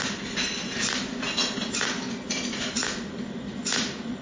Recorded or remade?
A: recorded